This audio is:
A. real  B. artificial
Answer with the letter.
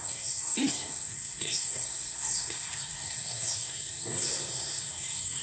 B